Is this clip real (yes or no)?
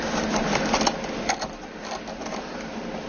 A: yes